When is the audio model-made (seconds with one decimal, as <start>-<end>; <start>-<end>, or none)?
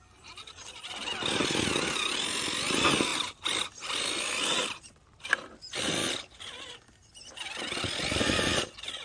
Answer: none